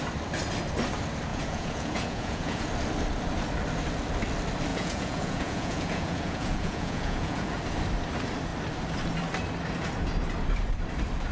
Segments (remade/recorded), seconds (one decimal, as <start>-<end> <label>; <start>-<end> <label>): 0.0-1.3 recorded; 1.3-2.7 remade; 2.7-4.7 recorded; 4.7-7.6 remade; 7.6-11.3 recorded